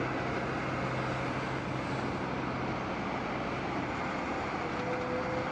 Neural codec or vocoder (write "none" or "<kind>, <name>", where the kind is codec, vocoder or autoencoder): none